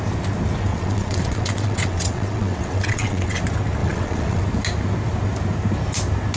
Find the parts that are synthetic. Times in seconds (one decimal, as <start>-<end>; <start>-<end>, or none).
0.7-3.4; 3.8-4.4